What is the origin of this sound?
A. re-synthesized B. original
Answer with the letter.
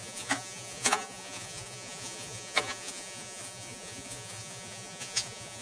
A